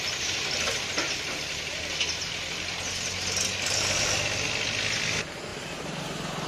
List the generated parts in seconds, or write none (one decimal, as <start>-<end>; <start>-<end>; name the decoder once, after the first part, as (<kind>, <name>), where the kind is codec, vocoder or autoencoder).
5.5-6.5 (vocoder, BigVGAN v2)